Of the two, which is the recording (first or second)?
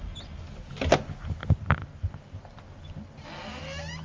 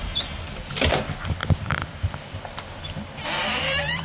first